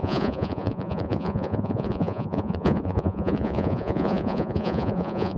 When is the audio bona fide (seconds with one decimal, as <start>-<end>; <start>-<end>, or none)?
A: none